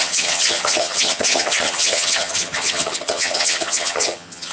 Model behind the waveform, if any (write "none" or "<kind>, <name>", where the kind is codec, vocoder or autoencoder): vocoder, HiFi-GAN